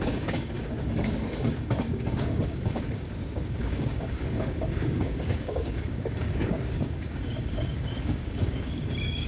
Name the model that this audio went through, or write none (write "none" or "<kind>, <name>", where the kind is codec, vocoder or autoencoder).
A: codec, DAC